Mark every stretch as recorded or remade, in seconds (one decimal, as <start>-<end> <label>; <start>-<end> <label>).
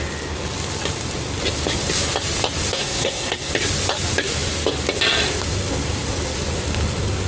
0.0-2.7 recorded; 2.7-3.5 remade; 3.5-7.3 recorded